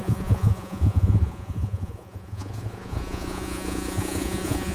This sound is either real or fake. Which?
fake